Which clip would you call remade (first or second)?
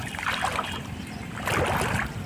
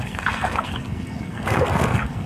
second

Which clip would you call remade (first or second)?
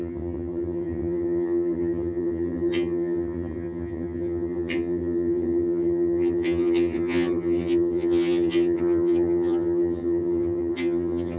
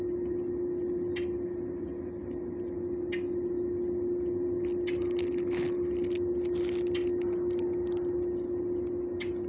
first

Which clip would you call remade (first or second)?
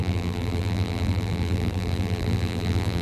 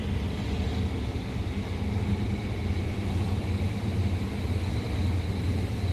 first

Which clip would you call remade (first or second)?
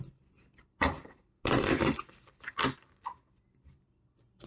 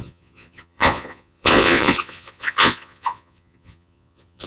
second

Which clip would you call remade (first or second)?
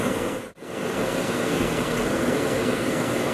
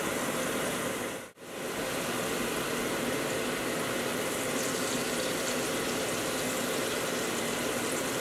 first